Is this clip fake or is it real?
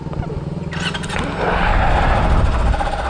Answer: real